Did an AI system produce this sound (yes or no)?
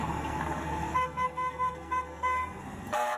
yes